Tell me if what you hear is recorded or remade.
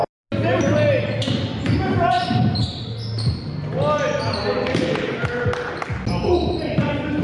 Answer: recorded